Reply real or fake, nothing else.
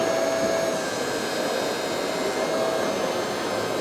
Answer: real